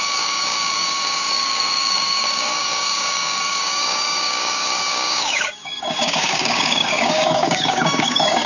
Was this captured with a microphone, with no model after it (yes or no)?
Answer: no